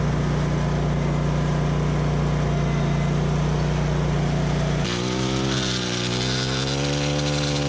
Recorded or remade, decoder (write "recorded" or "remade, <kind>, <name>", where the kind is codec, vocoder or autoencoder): recorded